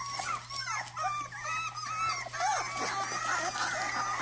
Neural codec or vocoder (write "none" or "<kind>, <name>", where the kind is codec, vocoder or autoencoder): none